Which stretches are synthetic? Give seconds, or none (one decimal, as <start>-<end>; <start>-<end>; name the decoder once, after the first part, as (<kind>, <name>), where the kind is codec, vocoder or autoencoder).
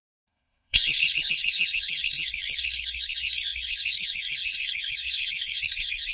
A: 0.0-6.1 (codec, SNAC)